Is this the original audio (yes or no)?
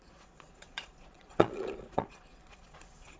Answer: no